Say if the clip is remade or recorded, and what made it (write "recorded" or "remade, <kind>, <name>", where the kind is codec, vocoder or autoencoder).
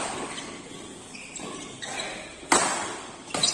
recorded